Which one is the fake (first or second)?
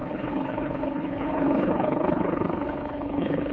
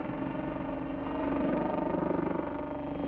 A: first